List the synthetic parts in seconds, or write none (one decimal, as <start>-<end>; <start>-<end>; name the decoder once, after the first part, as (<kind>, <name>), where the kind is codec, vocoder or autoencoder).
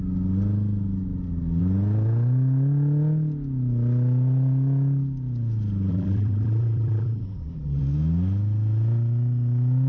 5.9-7.8 (vocoder, BigVGAN v2)